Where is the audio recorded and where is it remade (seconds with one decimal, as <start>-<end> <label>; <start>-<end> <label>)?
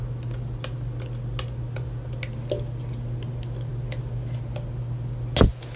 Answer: 0.0-5.8 recorded